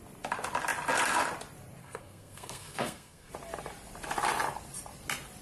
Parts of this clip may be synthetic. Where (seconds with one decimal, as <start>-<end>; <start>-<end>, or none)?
1.8-3.3